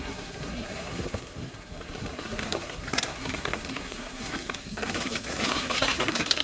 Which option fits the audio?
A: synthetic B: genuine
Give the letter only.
A